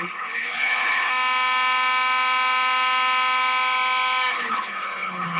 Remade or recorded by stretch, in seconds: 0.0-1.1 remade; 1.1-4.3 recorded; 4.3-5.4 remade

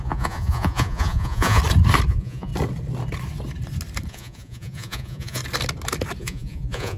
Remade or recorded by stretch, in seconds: 0.0-1.6 remade; 1.6-2.1 recorded; 2.1-2.5 remade; 2.5-4.1 recorded; 4.1-5.4 remade; 5.4-6.2 recorded; 6.2-7.0 remade